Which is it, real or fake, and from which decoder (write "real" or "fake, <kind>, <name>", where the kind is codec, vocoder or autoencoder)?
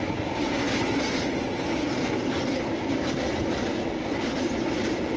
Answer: real